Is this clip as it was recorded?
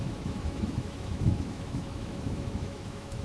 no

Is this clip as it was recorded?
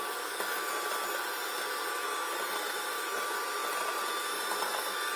yes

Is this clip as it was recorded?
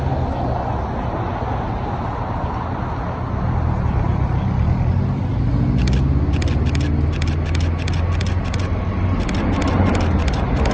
yes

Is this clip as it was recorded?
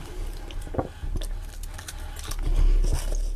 yes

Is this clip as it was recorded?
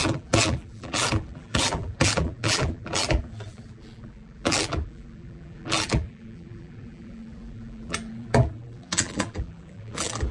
no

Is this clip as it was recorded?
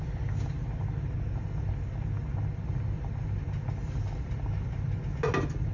yes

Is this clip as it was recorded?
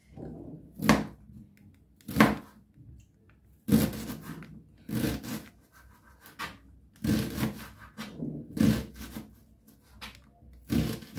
yes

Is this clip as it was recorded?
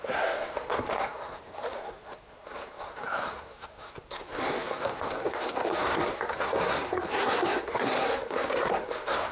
no